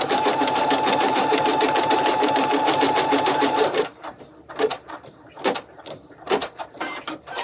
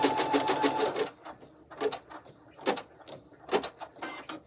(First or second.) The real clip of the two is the second